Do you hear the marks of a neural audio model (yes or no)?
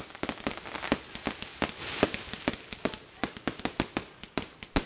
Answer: no